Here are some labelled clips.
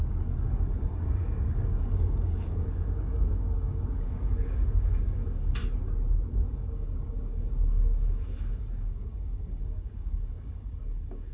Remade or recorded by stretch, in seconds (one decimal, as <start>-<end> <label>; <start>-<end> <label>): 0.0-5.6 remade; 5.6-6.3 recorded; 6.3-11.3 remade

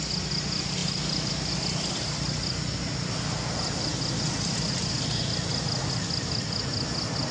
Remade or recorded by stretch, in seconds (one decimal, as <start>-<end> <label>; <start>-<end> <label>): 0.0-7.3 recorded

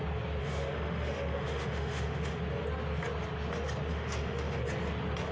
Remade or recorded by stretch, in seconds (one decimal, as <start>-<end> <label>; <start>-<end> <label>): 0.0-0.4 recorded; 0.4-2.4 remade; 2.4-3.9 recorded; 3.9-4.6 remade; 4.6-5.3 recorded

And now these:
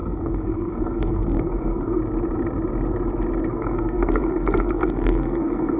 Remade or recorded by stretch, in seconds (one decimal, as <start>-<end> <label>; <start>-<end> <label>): 0.0-2.0 remade; 2.0-3.5 recorded; 3.5-5.8 remade

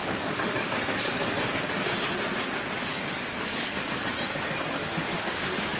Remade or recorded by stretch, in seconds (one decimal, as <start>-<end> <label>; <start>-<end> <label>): 0.0-1.6 remade; 1.6-2.9 recorded; 2.9-4.1 remade; 4.1-4.8 recorded; 4.8-5.8 remade

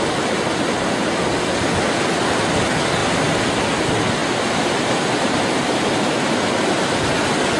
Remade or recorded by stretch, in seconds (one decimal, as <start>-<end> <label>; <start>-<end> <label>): 0.0-3.0 recorded; 3.0-3.5 remade; 3.5-4.2 recorded; 4.2-6.5 remade; 6.5-7.6 recorded